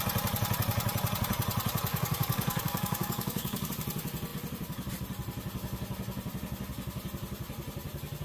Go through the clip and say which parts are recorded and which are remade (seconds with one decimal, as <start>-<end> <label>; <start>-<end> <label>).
0.0-1.9 recorded; 1.9-3.7 remade; 3.7-8.2 recorded